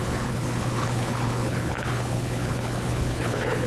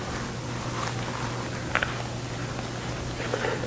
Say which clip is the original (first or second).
second